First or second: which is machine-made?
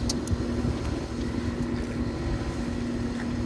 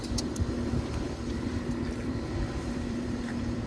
second